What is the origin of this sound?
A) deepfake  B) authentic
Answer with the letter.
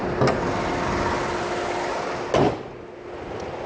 B